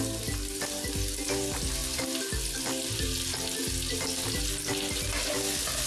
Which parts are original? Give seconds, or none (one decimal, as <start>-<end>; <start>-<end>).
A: 0.0-5.9